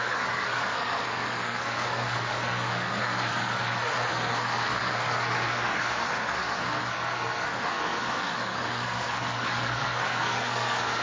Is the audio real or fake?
fake